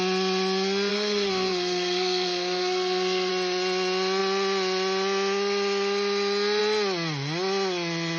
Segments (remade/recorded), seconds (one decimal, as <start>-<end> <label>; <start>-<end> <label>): 0.0-0.9 recorded; 0.9-3.3 remade; 3.3-8.2 recorded